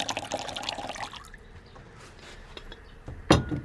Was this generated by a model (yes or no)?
no